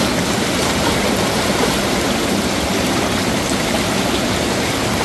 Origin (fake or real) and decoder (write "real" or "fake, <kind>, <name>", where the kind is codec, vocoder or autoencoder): real